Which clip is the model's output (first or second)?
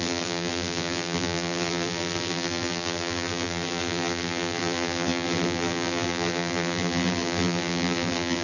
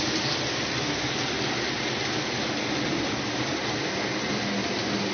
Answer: first